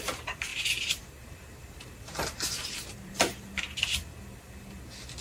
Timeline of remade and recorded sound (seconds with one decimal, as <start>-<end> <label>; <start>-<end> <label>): 0.0-0.5 recorded; 0.5-3.6 remade; 3.6-5.2 recorded